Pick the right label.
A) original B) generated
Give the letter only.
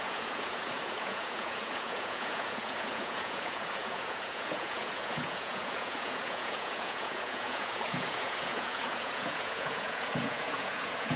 B